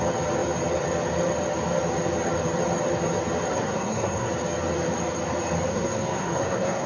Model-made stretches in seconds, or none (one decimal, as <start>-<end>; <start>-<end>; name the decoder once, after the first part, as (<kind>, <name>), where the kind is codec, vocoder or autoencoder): 3.5-4.3 (codec, SNAC); 5.7-6.9